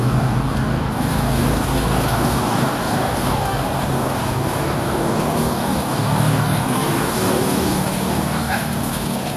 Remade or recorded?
remade